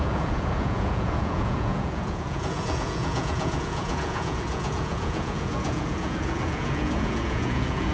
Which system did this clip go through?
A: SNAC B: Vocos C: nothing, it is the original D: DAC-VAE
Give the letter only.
B